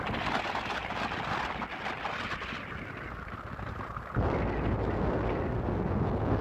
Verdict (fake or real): real